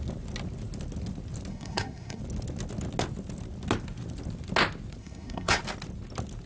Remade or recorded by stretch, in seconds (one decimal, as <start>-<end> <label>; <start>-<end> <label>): 0.0-1.5 recorded; 1.5-2.2 remade; 2.2-5.0 recorded; 5.0-5.6 remade; 5.6-6.5 recorded